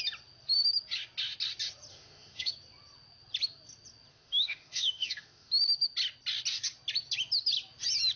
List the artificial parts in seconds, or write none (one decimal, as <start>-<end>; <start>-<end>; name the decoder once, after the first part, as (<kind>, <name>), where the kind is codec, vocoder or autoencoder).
1.9-2.5 (autoencoder, DAC-VAE); 4.1-5.5